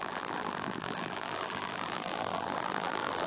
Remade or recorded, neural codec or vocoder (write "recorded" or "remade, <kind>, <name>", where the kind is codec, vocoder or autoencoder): remade, vocoder, BigVGAN v2